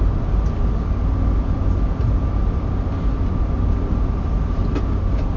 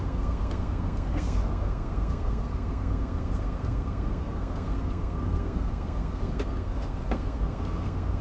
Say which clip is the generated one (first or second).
second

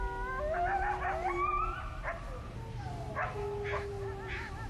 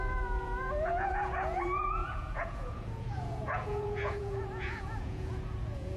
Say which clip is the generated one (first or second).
second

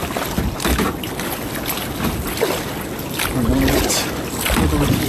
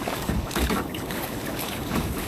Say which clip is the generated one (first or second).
second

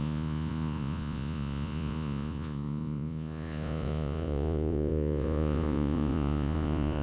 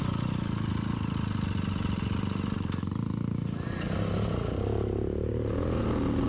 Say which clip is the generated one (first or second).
first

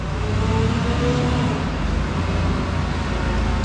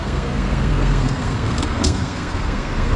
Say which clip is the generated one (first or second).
second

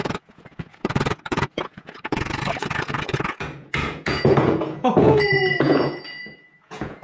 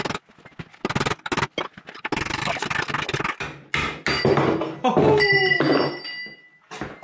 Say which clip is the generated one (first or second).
first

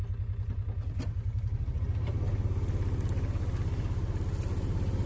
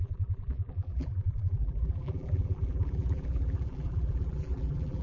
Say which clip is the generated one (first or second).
second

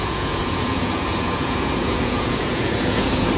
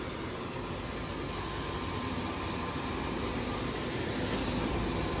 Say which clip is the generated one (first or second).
first